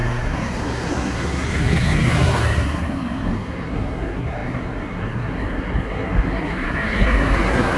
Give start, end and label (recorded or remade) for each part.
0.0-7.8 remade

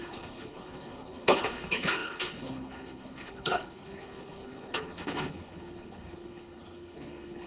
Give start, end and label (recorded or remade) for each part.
0.0-7.5 remade

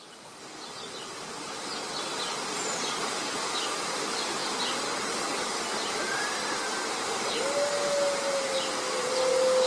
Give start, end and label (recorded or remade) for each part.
0.0-9.7 recorded

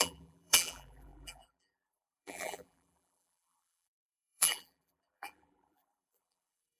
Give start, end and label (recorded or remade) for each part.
0.0-6.8 remade

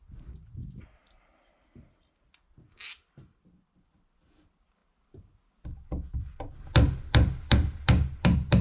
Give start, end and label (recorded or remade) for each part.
0.0-4.8 remade; 4.8-6.1 recorded; 6.1-8.6 remade